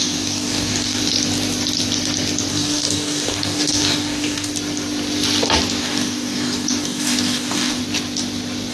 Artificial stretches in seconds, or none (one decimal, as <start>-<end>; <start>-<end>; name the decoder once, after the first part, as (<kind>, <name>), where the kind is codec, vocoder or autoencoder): 0.0-1.0 (codec, DAC); 2.5-4.5; 5.8-7.8